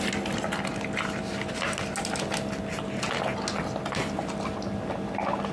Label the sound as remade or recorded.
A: recorded